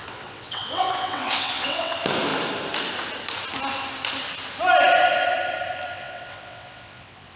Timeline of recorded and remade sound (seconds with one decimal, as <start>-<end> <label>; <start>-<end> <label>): 0.0-1.9 remade; 1.9-5.9 recorded; 5.9-7.4 remade